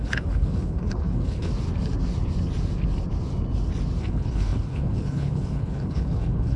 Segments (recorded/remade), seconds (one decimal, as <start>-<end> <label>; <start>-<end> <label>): 0.0-1.5 remade; 1.5-4.0 recorded; 4.0-6.6 remade